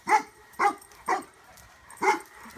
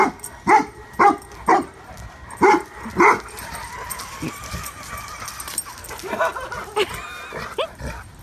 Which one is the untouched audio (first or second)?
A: second